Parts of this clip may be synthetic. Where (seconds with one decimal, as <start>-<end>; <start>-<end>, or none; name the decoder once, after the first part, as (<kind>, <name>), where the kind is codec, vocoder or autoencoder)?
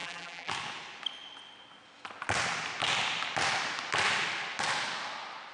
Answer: 0.0-0.5 (vocoder, BigVGAN v2)